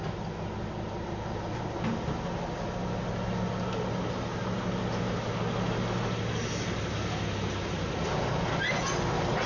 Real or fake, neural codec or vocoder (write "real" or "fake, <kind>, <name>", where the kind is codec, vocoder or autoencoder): real